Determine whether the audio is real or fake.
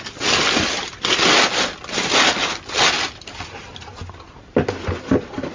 real